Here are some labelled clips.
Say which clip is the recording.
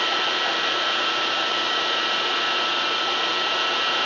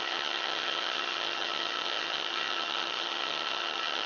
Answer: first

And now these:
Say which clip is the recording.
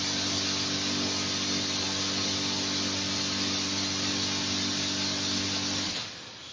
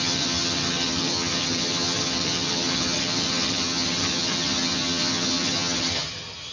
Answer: first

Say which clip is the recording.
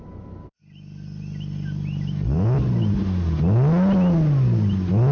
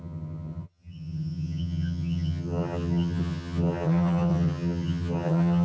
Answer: first